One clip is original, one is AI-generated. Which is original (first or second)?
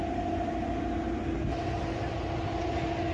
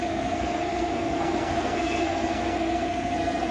first